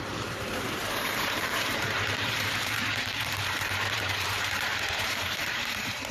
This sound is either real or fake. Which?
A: fake